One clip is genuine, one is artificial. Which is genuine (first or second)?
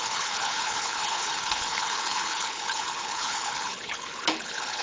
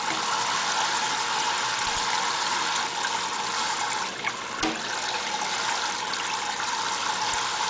second